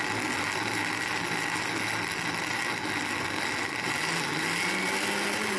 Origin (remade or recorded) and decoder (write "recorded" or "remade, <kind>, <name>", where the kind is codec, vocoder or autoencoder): recorded